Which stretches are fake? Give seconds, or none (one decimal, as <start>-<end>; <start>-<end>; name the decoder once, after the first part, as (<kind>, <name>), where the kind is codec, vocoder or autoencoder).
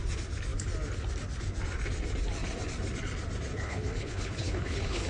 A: 3.5-5.1 (codec, HILCodec)